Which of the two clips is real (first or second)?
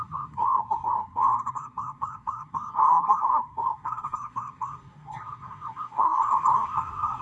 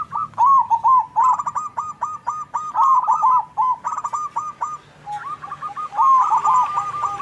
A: second